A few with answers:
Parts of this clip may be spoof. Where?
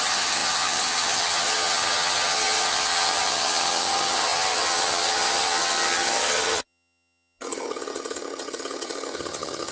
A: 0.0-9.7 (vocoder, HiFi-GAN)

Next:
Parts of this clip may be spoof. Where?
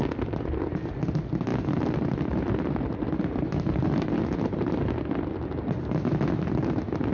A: none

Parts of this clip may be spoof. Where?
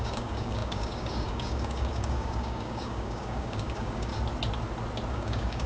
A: 0.0-4.1 (codec, DAC); 5.1-5.7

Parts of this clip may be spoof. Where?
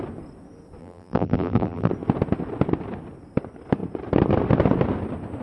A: 0.8-1.9 (vocoder, BigVGAN v2)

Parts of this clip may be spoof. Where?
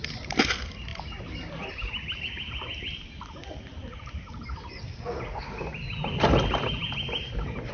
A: none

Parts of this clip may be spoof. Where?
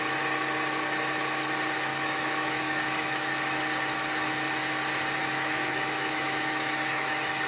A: 1.9-3.3 (autoencoder, DAC-VAE); 5.2-7.5